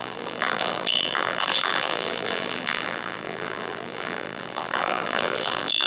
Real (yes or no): no